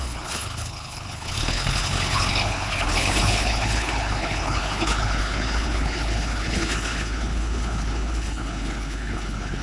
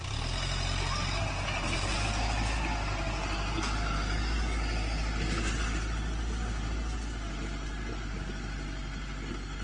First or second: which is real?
second